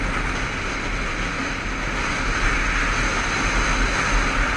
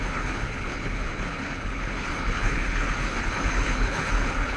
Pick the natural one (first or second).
first